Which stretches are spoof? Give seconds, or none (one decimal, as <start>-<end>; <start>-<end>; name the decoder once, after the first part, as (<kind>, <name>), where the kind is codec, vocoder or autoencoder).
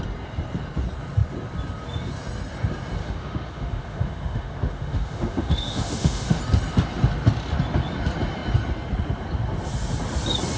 3.0-6.4 (autoencoder, DAC-VAE)